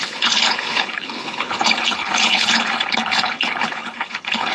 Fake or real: fake